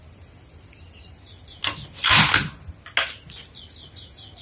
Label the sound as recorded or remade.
recorded